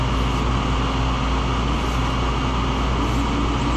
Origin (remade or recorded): recorded